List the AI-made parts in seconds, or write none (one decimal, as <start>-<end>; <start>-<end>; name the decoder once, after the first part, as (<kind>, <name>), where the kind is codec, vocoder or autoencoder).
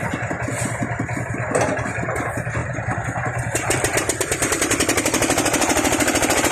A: 2.6-6.5 (vocoder, BigVGAN v2)